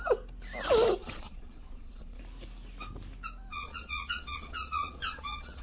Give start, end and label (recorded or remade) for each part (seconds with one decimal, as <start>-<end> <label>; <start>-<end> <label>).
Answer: 0.0-1.0 recorded; 1.0-2.2 remade; 2.2-3.5 recorded; 3.5-5.6 remade